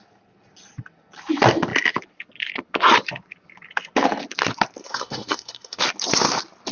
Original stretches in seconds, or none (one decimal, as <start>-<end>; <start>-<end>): 0.0-4.8; 5.8-6.7